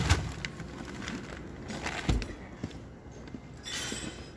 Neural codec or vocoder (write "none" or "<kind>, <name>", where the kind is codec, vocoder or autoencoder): none